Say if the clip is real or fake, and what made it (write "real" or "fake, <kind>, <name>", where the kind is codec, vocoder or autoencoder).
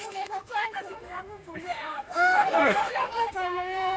fake, autoencoder, DAC-VAE